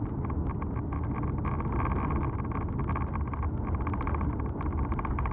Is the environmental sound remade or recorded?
recorded